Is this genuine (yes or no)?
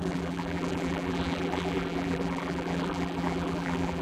no